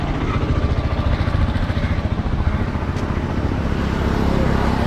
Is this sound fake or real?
real